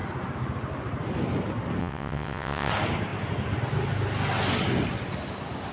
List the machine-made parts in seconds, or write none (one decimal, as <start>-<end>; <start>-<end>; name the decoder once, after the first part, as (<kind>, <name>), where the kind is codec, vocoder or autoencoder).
1.8-2.7 (vocoder, WaveNeXt)